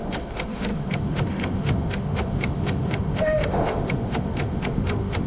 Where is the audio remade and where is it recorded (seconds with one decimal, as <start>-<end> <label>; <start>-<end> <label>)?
0.0-5.3 remade